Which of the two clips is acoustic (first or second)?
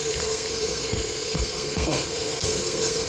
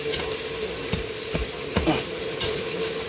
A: second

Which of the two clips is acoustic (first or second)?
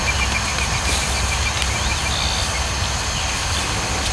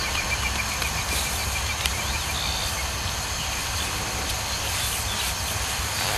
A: first